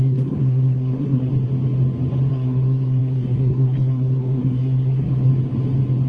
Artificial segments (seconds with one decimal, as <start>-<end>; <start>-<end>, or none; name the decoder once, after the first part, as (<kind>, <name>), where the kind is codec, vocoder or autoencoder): 0.0-1.3 (codec, SNAC); 2.3-5.3